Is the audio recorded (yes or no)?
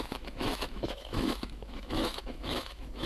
no